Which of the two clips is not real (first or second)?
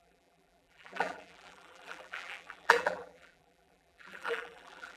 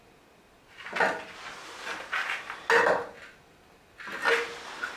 first